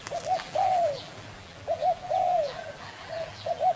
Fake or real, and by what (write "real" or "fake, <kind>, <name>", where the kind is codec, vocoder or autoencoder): fake, vocoder, BigVGAN v2